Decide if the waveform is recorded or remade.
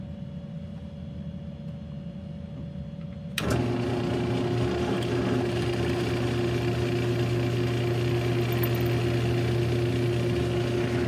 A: recorded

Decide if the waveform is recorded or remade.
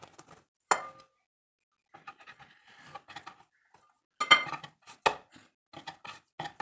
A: recorded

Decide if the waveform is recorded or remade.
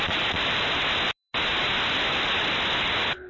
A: recorded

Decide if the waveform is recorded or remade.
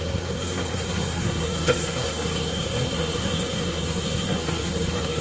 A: remade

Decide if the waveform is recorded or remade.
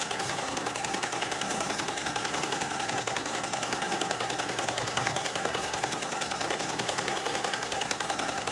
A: remade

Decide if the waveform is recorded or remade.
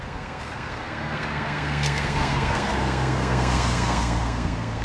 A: remade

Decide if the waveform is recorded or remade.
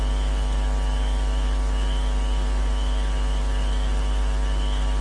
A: recorded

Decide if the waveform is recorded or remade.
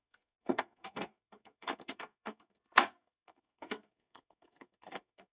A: remade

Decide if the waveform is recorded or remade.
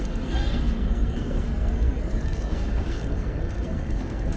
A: remade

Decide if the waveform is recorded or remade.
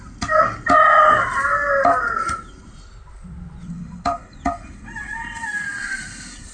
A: recorded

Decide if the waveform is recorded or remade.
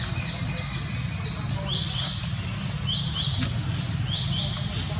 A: recorded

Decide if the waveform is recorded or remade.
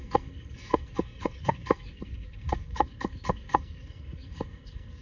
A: remade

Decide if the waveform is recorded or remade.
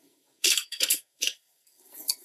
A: remade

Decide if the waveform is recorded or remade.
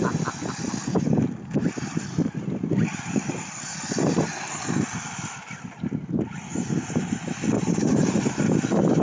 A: recorded